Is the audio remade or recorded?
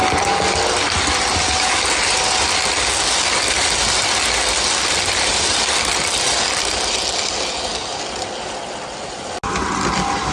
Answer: recorded